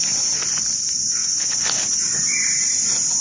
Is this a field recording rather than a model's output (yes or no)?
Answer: yes